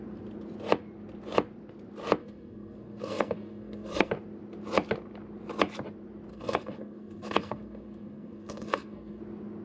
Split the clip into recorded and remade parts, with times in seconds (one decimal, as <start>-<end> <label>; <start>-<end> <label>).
0.0-2.2 recorded; 2.2-4.1 remade; 4.1-6.3 recorded; 6.3-9.2 remade; 9.2-9.6 recorded